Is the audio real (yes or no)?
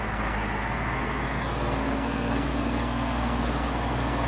no